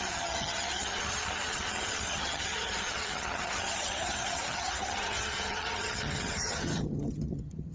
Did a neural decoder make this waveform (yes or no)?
yes